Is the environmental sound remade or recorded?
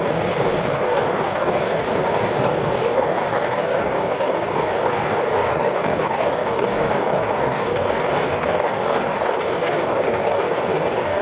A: remade